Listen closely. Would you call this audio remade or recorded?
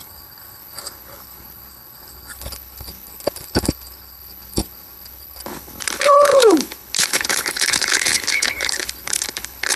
remade